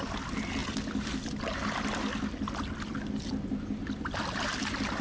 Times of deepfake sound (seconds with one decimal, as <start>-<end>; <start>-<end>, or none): none